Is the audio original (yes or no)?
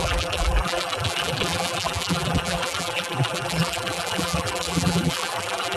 no